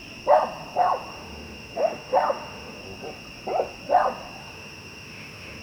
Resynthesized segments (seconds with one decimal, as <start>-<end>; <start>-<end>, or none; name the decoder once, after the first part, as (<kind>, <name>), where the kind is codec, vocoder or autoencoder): 1.1-2.8 (autoencoder, DAC-VAE); 4.4-5.6